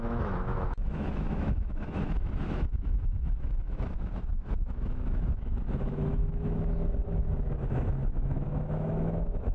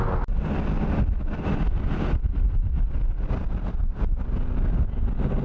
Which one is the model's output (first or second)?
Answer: first